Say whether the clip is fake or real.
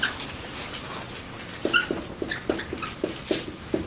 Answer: real